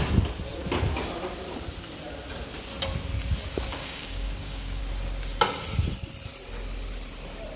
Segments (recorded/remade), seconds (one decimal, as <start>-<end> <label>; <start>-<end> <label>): 0.0-3.7 recorded; 3.7-4.8 remade; 4.8-7.6 recorded